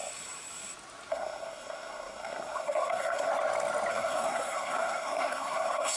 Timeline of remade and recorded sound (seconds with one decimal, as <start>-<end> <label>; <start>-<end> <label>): 0.0-1.1 recorded; 1.1-3.3 remade; 3.3-3.9 recorded; 3.9-6.0 remade

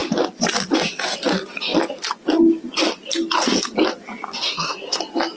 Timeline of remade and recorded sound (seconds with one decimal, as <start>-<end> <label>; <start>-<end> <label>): 0.0-4.4 recorded; 4.4-5.0 remade; 5.0-5.4 recorded